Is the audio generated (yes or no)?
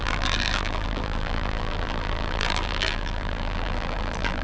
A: yes